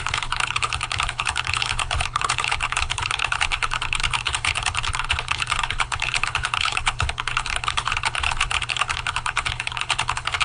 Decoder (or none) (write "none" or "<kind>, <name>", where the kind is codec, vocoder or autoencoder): codec, HILCodec